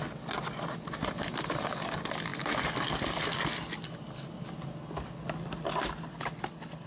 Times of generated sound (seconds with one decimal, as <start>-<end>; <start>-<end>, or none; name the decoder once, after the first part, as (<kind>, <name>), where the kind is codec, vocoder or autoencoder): none